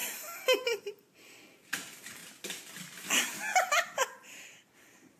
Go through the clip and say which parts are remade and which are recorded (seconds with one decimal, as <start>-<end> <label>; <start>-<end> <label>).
0.0-2.2 remade; 2.2-3.7 recorded; 3.7-5.2 remade